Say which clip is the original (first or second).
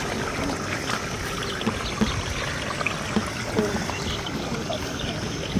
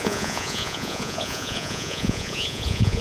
first